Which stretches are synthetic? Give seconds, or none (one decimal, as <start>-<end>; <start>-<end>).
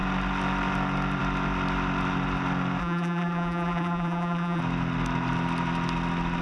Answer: 2.8-4.6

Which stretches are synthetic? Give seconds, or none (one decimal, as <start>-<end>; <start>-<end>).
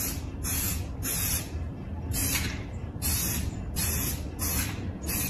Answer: 0.0-5.3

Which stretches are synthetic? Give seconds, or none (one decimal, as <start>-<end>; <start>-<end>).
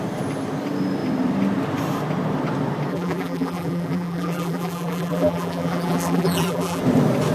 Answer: 2.9-6.8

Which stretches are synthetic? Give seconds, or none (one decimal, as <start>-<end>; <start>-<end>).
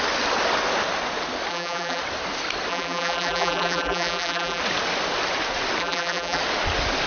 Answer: 1.5-2.0; 2.7-4.6; 5.8-6.4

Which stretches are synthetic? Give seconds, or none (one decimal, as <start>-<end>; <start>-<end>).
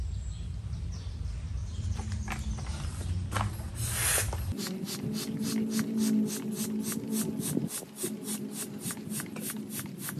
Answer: 0.0-1.1; 1.6-2.3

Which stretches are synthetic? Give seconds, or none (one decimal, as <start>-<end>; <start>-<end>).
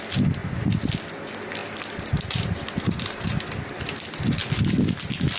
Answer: none